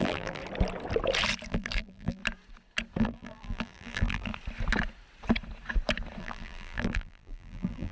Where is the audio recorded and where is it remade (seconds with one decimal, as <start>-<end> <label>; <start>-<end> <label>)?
0.0-0.4 remade; 0.4-1.5 recorded; 1.5-2.2 remade; 2.2-3.0 recorded; 3.0-4.3 remade; 4.3-6.2 recorded; 6.2-7.9 remade